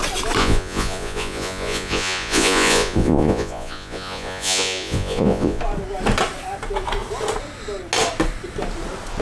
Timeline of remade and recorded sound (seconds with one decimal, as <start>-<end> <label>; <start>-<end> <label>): 0.0-0.4 recorded; 0.4-5.6 remade; 5.6-9.2 recorded